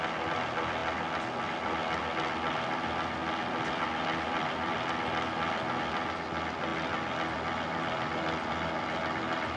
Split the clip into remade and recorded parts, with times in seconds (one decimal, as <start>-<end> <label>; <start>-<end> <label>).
0.0-0.8 remade; 0.8-1.4 recorded; 1.4-9.6 remade